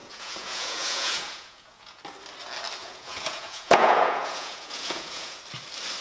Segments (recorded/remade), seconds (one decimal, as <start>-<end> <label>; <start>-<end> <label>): 0.0-2.0 remade; 2.0-2.8 recorded; 2.8-5.4 remade; 5.4-6.0 recorded